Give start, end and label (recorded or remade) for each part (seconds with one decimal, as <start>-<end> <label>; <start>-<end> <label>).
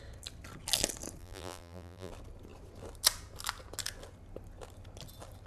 0.0-1.2 recorded; 1.2-2.1 remade; 2.1-5.5 recorded